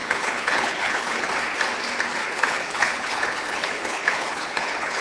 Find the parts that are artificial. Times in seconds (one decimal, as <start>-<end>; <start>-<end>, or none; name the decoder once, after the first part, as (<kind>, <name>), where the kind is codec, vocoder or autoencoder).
0.0-1.3 (codec, HILCodec); 2.2-5.0